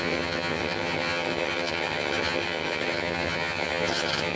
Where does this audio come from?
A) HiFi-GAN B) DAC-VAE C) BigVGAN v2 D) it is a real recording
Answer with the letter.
A